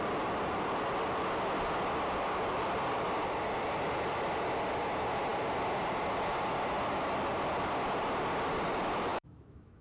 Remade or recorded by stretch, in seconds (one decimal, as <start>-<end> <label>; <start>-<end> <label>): 0.0-9.1 recorded; 9.1-9.8 remade